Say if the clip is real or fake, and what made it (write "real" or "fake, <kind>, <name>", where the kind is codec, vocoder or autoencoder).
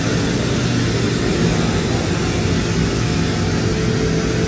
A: real